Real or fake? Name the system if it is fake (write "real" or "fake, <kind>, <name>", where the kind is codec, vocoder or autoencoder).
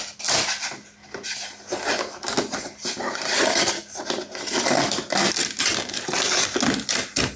real